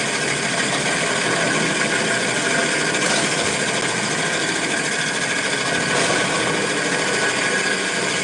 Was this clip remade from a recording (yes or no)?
no